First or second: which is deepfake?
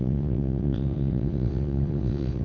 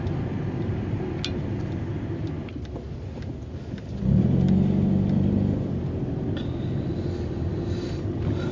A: first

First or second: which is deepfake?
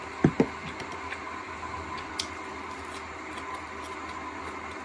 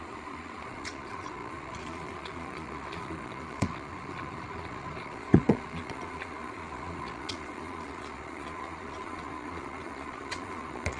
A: second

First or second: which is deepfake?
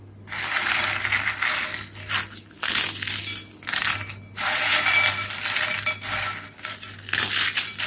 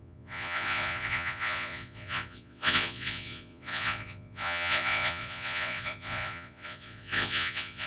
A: second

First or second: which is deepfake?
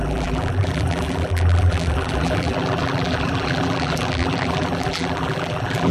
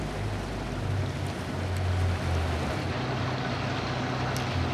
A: first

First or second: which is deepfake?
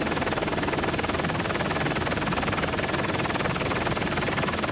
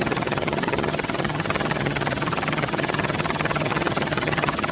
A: second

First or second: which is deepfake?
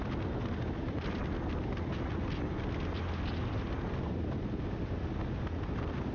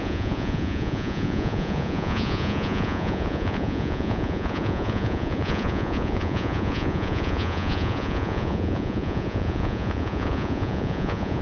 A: second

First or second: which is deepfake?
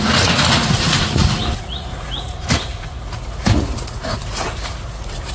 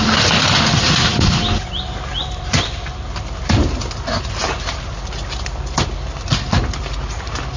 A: first